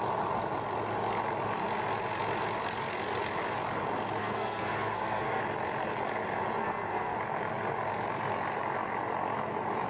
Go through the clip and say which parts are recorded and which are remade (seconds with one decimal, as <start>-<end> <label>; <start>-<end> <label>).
0.0-4.2 recorded; 4.2-5.4 remade; 5.4-6.6 recorded; 6.6-7.2 remade; 7.2-9.9 recorded